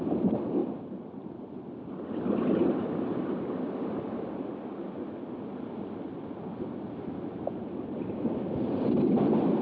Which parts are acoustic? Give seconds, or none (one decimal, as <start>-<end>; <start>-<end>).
0.0-0.6; 1.9-9.6